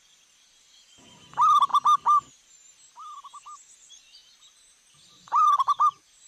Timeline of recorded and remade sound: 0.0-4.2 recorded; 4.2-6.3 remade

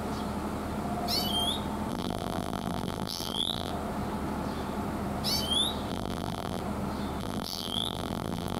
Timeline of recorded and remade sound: 0.0-1.9 recorded; 1.9-3.7 remade; 3.7-5.9 recorded; 5.9-6.6 remade; 6.6-7.2 recorded; 7.2-8.6 remade

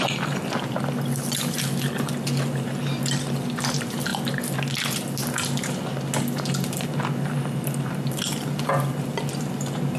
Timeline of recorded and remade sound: 0.0-10.0 recorded

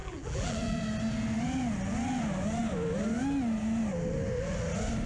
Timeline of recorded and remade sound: 0.0-0.8 remade; 0.8-5.1 recorded